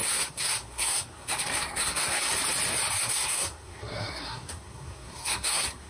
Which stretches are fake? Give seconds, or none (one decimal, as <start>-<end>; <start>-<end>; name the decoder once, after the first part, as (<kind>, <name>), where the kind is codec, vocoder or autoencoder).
0.0-2.3 (codec, SNAC); 3.0-5.9